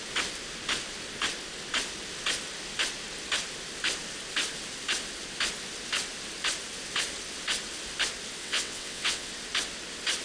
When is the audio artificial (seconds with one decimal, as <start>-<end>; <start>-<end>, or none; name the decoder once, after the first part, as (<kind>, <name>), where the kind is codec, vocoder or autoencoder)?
8.4-9.3 (vocoder, WaveNeXt)